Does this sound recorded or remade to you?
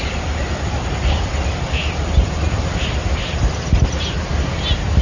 recorded